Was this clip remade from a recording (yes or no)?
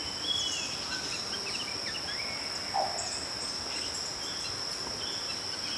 no